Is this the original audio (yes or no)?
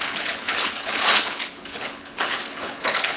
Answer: no